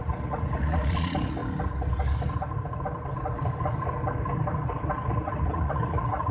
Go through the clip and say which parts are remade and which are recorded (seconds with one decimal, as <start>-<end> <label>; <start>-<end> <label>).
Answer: 0.0-1.4 remade; 1.4-5.1 recorded; 5.1-6.3 remade